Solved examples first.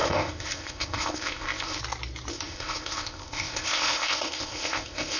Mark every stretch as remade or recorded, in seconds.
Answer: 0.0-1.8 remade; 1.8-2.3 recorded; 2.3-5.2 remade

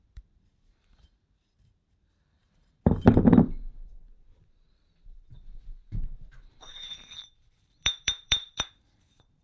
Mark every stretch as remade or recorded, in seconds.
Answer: 0.0-9.4 remade

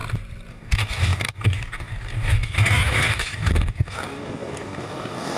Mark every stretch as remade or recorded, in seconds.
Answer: 0.0-0.5 recorded; 0.5-5.4 remade

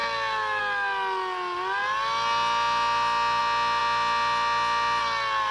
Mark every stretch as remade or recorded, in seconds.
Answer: 0.0-5.5 recorded

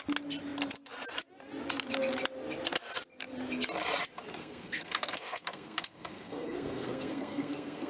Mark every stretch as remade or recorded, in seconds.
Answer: 0.0-4.4 recorded; 4.4-7.9 remade